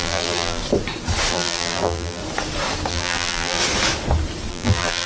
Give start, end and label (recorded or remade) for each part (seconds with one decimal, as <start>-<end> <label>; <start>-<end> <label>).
0.0-0.6 remade; 0.6-1.3 recorded; 1.3-2.2 remade; 2.2-2.9 recorded; 2.9-3.6 remade; 3.6-4.5 recorded; 4.5-5.1 remade

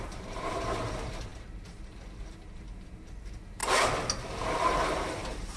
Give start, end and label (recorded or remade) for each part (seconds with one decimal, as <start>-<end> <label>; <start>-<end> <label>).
0.0-3.6 remade; 3.6-4.7 recorded; 4.7-5.6 remade

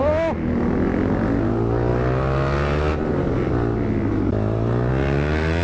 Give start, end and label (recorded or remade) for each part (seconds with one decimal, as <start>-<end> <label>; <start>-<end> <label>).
0.0-5.6 recorded

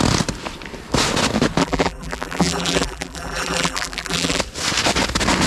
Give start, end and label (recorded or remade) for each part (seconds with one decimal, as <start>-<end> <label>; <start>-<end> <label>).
0.0-1.6 recorded; 1.6-4.4 remade; 4.4-5.5 recorded

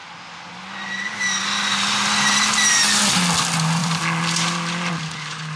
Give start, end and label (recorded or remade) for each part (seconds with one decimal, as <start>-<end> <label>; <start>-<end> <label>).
0.0-3.8 recorded; 3.8-4.9 remade; 4.9-5.6 recorded

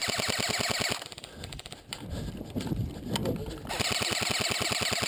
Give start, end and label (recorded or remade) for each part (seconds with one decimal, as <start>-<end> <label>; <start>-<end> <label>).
0.0-5.1 recorded

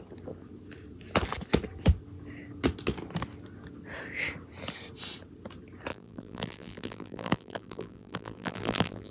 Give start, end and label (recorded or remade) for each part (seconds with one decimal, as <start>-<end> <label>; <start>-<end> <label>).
0.0-5.9 recorded; 5.9-9.1 remade

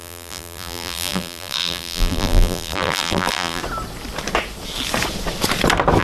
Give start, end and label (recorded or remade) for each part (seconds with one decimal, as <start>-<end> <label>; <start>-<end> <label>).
0.0-3.6 remade; 3.6-6.0 recorded